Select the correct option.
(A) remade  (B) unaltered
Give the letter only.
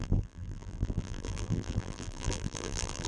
A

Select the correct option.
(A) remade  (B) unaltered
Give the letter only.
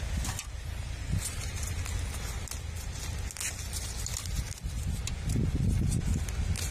B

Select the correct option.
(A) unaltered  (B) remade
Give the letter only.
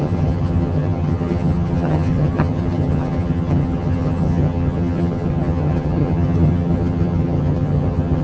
B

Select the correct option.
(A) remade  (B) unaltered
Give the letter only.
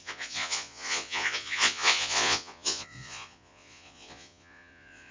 A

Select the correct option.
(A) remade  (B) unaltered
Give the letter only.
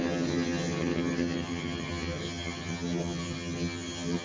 A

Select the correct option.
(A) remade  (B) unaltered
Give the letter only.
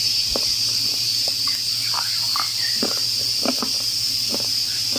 B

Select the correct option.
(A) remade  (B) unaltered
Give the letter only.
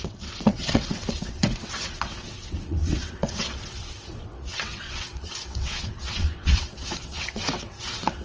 A